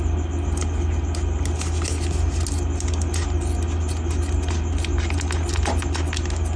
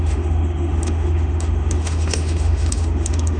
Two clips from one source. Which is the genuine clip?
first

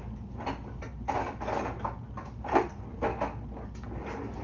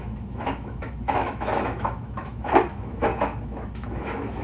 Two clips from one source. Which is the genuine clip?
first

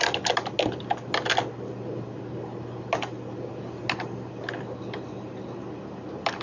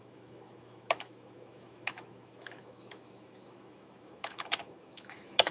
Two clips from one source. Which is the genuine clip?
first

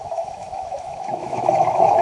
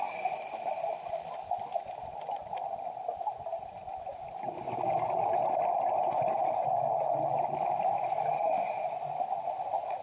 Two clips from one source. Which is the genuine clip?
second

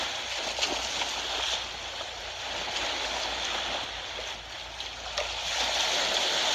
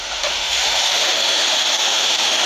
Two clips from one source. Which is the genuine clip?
first